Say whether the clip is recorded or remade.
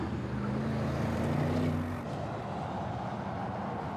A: recorded